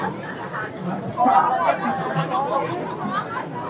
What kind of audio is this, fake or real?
real